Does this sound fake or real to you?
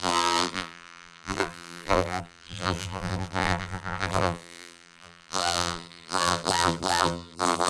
fake